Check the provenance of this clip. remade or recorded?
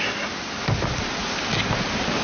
recorded